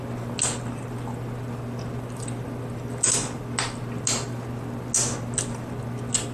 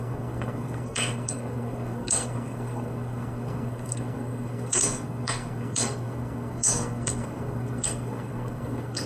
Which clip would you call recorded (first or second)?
first